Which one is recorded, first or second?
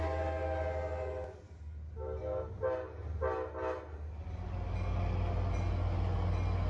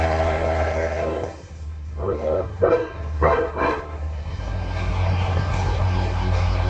first